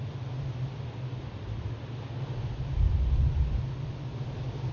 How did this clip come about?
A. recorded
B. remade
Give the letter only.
A